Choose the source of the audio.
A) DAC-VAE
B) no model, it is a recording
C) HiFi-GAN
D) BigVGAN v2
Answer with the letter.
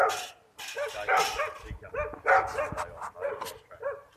B